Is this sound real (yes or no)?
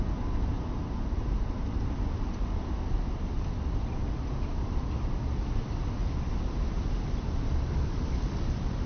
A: yes